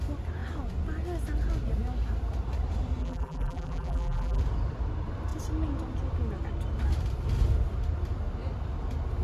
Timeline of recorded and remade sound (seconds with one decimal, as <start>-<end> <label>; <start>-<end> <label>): 0.0-3.0 recorded; 3.0-4.4 remade; 4.4-9.2 recorded